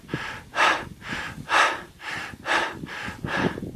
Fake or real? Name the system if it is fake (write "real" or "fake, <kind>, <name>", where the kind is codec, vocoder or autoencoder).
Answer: real